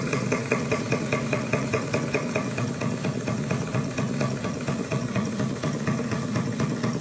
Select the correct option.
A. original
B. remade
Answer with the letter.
B